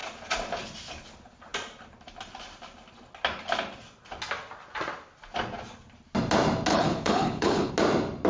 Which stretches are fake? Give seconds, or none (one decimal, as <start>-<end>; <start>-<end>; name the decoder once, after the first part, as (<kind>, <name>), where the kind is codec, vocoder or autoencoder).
6.7-7.7 (codec, HILCodec)